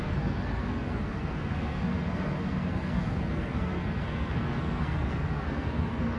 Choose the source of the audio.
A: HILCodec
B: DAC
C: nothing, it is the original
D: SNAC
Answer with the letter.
D